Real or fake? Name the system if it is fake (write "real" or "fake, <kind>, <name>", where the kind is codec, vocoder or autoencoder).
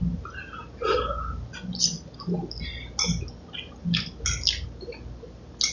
real